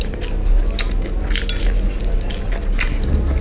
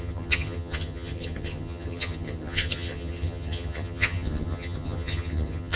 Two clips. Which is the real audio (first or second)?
first